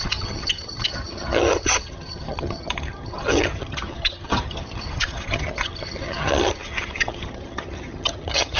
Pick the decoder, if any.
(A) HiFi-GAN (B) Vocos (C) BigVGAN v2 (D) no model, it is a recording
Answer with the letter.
A